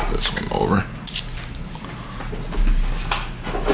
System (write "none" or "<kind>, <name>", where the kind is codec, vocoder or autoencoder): none